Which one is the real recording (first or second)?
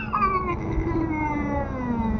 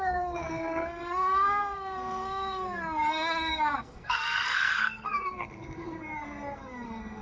first